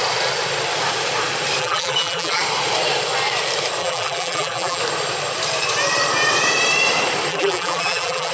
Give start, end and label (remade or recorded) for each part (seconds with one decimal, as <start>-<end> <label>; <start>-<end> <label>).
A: 0.0-1.6 recorded; 1.6-2.4 remade; 2.4-3.8 recorded; 3.8-4.8 remade; 4.8-7.3 recorded; 7.3-8.3 remade

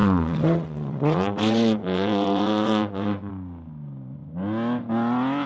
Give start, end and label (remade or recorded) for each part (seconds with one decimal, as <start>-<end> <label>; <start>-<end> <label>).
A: 0.0-3.3 remade; 3.3-5.5 recorded

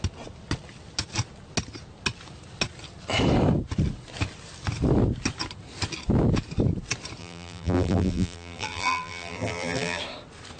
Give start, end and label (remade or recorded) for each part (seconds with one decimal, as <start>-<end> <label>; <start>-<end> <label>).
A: 0.0-7.2 recorded; 7.2-10.0 remade; 10.0-10.6 recorded

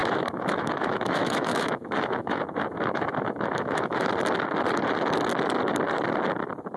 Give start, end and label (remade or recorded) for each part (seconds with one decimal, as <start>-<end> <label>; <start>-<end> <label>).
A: 0.0-4.1 remade; 4.1-6.8 recorded

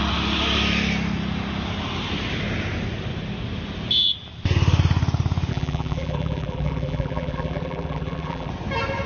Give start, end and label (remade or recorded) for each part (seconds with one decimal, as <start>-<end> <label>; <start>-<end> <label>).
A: 0.0-5.5 recorded; 5.5-8.5 remade; 8.5-9.1 recorded